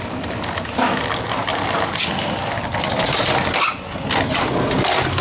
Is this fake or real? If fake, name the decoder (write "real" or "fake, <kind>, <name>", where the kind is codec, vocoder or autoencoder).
real